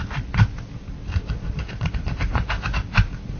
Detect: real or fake real